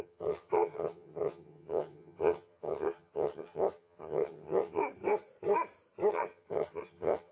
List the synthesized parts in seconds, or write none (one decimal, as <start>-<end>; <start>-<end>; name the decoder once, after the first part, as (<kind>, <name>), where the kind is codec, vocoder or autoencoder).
0.0-4.8 (vocoder, HiFi-GAN); 6.1-7.3